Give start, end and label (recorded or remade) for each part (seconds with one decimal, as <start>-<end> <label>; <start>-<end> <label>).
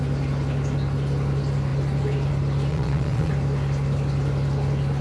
0.0-2.7 recorded; 2.7-3.3 remade; 3.3-5.0 recorded